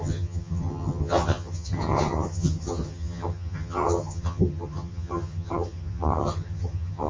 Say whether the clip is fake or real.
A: fake